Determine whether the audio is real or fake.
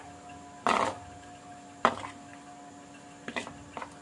real